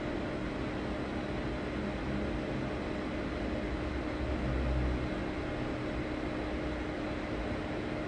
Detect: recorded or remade recorded